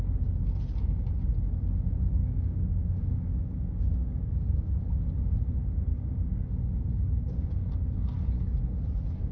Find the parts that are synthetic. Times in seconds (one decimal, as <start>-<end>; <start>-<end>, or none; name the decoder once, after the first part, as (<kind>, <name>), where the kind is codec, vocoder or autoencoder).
2.2-4.8 (codec, DAC); 5.9-7.6